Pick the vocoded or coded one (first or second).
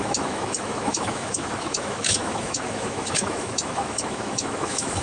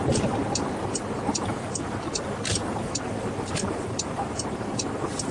first